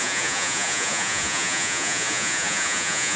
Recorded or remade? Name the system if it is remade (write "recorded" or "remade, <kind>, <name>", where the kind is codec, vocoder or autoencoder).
remade, vocoder, Vocos